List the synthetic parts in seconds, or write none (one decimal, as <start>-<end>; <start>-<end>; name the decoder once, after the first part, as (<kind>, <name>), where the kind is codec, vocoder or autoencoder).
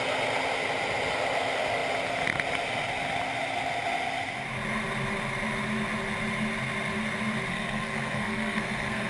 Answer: 7.5-9.1 (codec, SNAC)